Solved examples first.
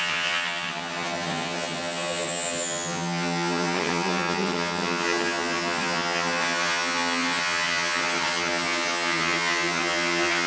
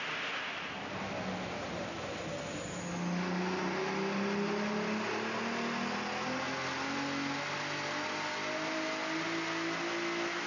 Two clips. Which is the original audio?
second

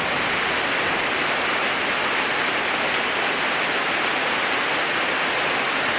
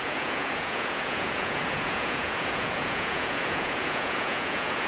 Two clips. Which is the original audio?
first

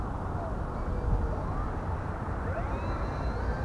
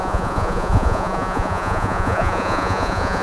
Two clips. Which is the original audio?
first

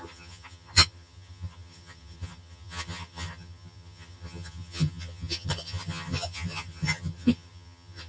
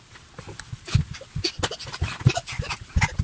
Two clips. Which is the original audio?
second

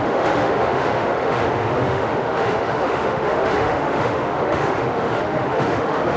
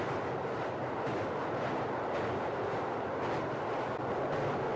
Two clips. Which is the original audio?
second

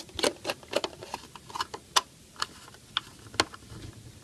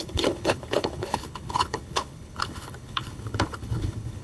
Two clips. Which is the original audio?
first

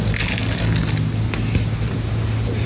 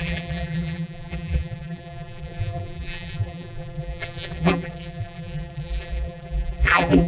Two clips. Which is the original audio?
first